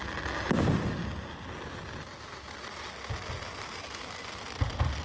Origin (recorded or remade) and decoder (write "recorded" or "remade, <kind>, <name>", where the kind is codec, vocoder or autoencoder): recorded